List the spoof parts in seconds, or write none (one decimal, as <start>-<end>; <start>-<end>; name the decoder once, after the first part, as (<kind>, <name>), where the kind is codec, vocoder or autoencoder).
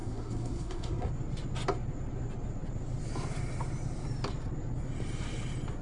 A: 0.0-1.1 (codec, SNAC)